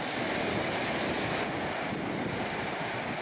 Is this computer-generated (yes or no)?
no